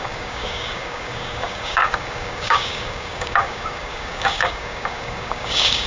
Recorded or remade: remade